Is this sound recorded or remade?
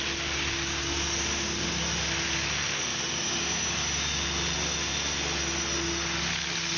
recorded